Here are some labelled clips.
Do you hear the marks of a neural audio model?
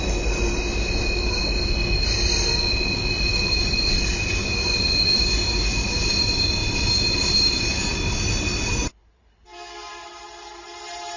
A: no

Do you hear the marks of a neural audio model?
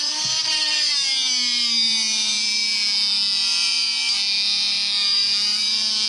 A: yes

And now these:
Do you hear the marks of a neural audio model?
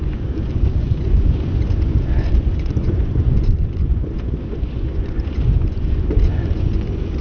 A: yes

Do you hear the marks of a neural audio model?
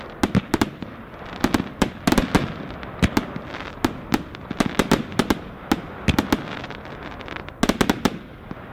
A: no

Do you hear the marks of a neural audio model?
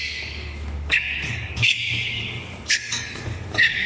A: yes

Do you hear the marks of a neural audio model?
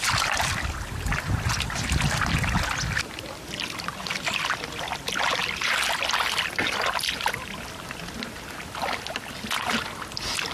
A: no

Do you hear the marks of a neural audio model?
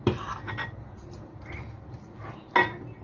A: no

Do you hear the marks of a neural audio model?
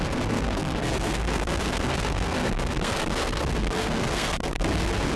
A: yes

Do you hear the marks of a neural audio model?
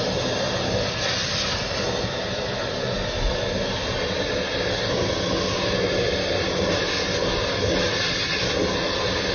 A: no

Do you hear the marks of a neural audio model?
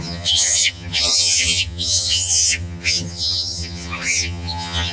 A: yes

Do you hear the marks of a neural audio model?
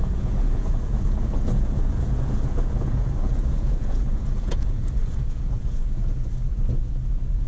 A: yes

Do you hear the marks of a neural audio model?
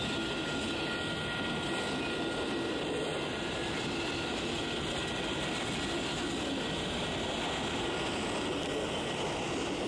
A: no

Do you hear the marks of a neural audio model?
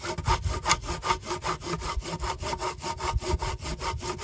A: no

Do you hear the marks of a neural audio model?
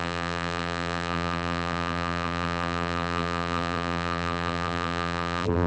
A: yes